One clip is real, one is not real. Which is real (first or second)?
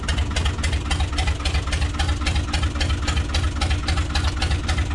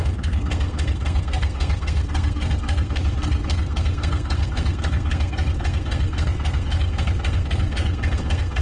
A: first